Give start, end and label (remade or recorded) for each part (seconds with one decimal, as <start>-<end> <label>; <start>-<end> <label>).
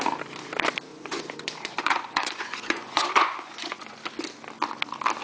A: 0.0-0.9 recorded; 0.9-4.0 remade; 4.0-5.2 recorded